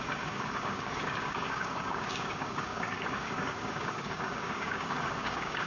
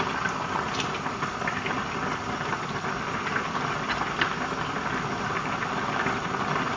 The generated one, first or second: first